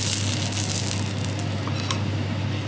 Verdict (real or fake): real